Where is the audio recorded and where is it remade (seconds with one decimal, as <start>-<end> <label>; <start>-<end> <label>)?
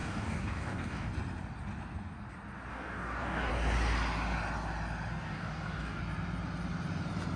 0.0-1.1 remade; 1.1-2.7 recorded; 2.7-3.5 remade; 3.5-5.1 recorded; 5.1-6.0 remade; 6.0-7.4 recorded